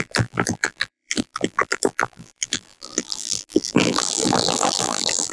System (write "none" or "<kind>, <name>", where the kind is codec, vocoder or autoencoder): vocoder, BigVGAN v2